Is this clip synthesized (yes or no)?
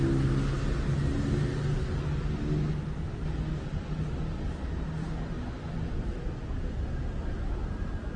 no